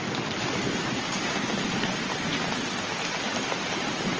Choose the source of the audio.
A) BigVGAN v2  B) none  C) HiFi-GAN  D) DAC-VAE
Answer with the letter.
B